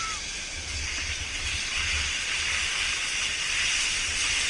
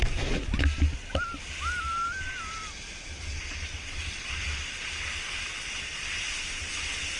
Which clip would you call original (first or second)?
second